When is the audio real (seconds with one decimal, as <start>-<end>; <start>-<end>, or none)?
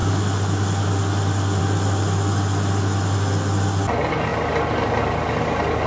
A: 0.0-5.9